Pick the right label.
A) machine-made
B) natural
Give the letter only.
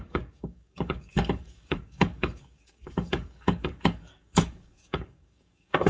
A